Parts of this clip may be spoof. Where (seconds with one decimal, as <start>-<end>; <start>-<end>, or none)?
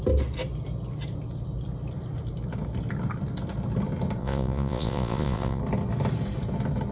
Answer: 4.2-5.6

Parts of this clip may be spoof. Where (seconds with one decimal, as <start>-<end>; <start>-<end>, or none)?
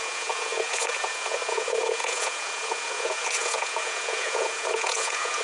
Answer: 0.0-5.4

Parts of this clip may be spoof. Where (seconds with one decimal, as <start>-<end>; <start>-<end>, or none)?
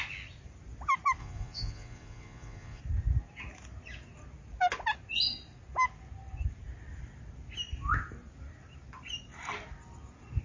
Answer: 1.2-2.8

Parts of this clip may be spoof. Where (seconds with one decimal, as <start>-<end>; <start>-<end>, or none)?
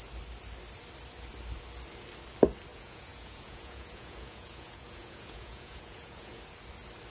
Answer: 2.7-6.4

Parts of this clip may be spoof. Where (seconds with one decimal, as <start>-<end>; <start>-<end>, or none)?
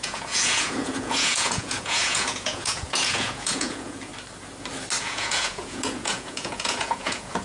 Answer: 0.0-4.1; 5.0-7.4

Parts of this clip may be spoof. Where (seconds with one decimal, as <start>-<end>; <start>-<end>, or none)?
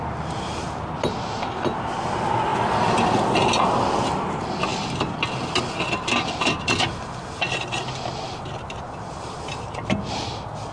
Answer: none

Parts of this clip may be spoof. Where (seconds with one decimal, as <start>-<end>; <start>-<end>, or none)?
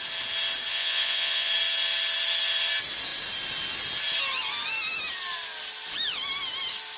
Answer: 0.7-1.5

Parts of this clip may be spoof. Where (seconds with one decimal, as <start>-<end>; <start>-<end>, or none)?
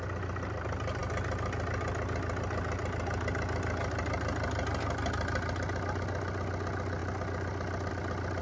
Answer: none